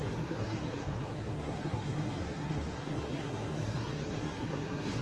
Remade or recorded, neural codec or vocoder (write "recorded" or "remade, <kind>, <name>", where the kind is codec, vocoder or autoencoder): remade, codec, SNAC